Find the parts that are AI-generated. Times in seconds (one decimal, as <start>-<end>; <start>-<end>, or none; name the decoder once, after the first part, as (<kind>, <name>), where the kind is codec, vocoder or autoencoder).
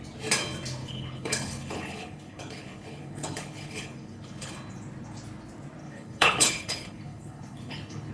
0.8-4.5 (codec, HILCodec); 5.8-8.1